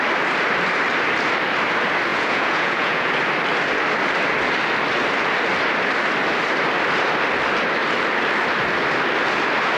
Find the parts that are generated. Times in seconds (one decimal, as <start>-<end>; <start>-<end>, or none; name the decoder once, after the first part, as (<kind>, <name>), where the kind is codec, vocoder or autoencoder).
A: 2.1-3.1 (vocoder, Vocos)